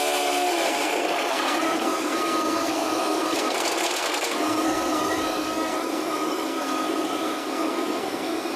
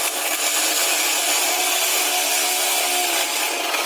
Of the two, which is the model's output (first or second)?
first